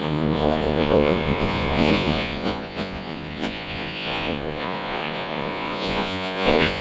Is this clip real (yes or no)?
no